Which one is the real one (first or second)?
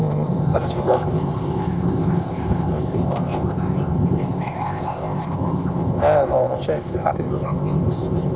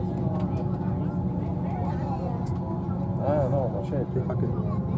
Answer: second